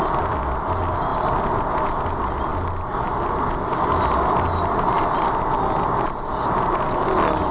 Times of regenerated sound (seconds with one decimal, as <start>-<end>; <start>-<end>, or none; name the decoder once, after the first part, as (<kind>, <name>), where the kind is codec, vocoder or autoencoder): none